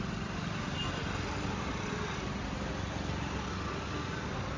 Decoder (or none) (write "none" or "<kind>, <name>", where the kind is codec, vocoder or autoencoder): none